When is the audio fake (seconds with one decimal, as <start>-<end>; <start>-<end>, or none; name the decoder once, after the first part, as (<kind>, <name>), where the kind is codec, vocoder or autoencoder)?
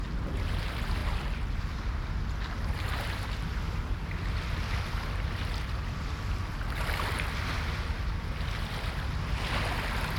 3.5-6.6 (vocoder, BigVGAN v2)